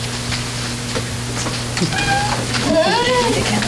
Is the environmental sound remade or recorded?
recorded